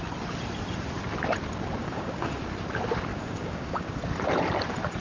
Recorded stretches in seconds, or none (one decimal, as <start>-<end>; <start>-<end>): 0.0-1.8; 2.4-3.1; 3.9-5.0